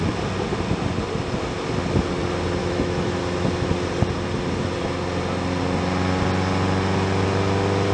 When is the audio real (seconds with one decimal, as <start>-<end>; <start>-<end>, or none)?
0.0-2.6; 3.2-7.9

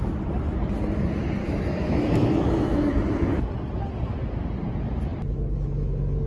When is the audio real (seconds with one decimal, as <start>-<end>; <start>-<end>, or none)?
0.0-1.4; 3.5-6.3

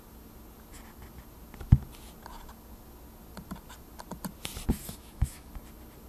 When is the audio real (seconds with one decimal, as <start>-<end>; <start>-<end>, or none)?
0.0-4.8; 5.5-6.1

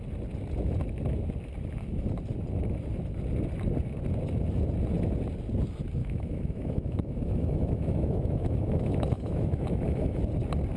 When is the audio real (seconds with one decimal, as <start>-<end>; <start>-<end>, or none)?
0.0-6.0; 10.2-10.8